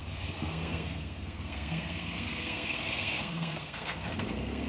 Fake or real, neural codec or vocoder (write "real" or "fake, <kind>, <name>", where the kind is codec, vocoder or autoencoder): fake, codec, SNAC